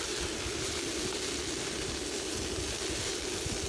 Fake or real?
real